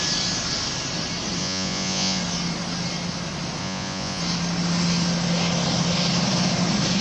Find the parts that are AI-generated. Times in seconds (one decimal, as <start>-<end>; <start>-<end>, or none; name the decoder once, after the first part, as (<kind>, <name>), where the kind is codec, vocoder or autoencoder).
1.4-2.2 (vocoder, Vocos); 3.6-4.2